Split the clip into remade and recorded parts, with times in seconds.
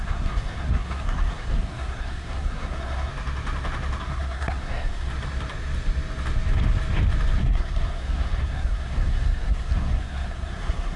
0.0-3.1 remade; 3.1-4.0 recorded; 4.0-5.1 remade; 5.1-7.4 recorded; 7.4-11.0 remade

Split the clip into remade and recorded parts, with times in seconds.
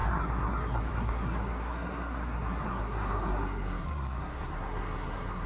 0.0-5.5 remade